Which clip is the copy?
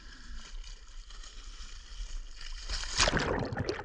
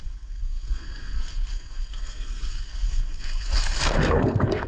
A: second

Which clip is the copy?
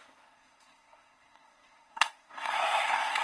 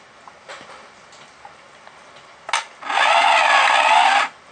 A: first